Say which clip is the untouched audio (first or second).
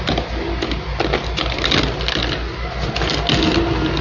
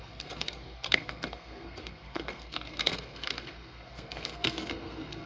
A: first